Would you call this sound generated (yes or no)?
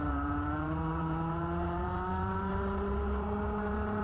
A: yes